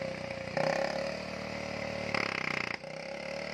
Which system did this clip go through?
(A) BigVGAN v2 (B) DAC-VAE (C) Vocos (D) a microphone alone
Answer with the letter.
D